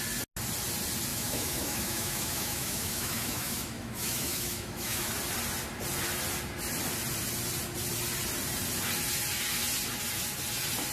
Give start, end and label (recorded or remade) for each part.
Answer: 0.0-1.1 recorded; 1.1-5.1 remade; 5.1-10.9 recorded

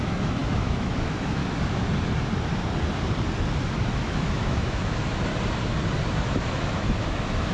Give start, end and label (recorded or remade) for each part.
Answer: 0.0-1.4 remade; 1.4-3.7 recorded; 3.7-5.3 remade; 5.3-6.2 recorded; 6.2-7.5 remade